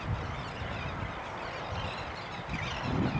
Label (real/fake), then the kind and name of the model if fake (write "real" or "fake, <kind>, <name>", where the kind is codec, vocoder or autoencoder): real